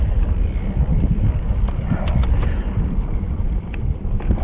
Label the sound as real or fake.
fake